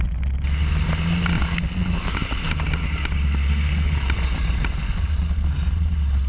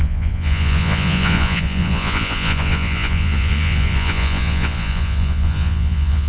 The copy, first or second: second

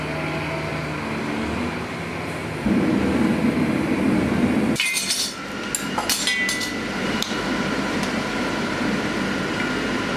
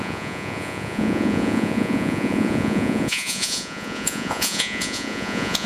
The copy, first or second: second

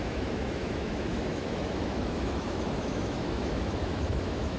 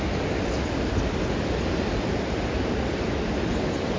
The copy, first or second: first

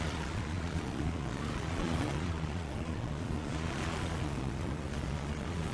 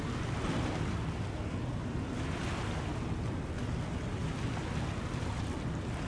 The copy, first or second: first